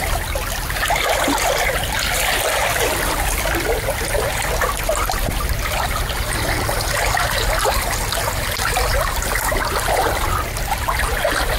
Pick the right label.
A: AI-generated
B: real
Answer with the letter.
B